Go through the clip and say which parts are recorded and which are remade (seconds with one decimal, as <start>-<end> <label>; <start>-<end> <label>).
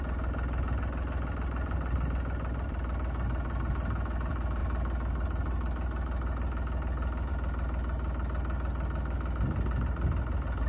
0.0-10.7 recorded